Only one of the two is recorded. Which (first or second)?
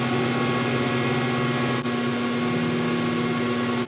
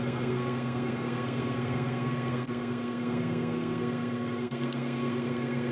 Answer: first